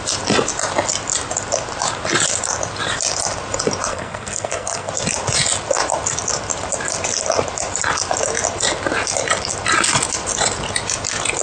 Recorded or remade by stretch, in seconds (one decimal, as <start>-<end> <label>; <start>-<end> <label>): 0.0-3.9 recorded; 3.9-4.9 remade; 4.9-11.4 recorded